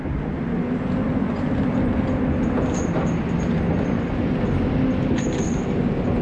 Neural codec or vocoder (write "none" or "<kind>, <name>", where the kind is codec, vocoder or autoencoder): none